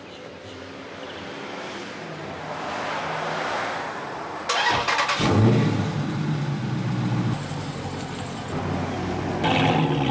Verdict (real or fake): real